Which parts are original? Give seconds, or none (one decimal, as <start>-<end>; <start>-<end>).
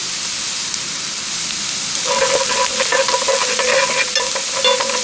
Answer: 0.0-5.0